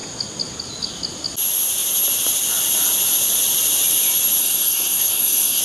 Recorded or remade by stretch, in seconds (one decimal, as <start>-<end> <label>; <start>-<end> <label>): 0.0-4.4 recorded; 4.4-5.6 remade